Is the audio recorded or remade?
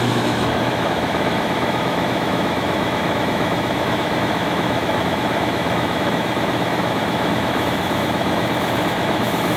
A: remade